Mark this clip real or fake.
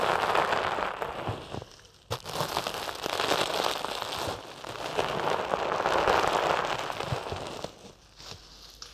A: real